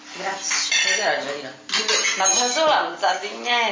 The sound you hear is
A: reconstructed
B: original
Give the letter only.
B